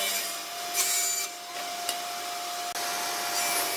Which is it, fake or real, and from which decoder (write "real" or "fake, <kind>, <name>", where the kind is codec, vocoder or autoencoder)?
real